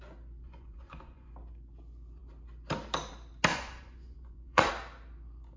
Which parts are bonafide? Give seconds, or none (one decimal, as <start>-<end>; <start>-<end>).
0.0-0.4; 1.3-3.5; 4.7-5.6